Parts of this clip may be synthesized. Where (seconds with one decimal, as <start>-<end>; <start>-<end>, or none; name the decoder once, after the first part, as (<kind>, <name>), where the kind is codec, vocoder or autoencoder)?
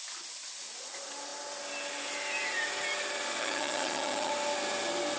3.4-4.3 (vocoder, HiFi-GAN)